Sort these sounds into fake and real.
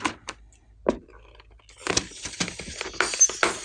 real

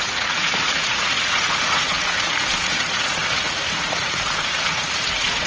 fake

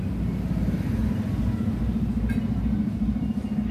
real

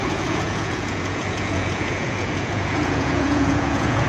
fake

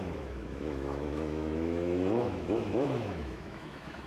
fake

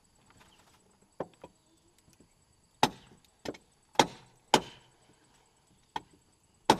real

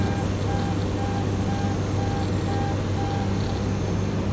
real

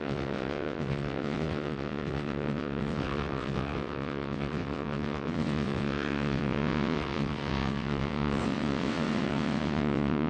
fake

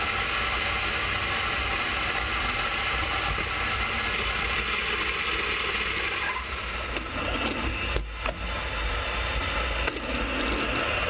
real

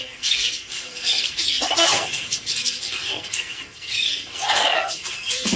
fake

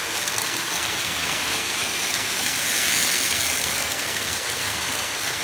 fake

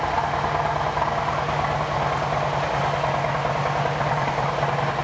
real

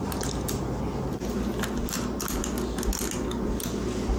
real